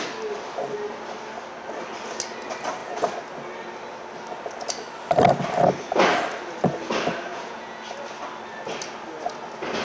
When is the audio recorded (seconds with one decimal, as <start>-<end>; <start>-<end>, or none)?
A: 0.0-7.3; 7.8-9.8